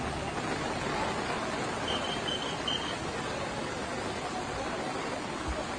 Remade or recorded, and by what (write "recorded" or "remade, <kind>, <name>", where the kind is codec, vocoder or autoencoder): recorded